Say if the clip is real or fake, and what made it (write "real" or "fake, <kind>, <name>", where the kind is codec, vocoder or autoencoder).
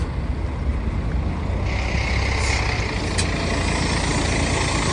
real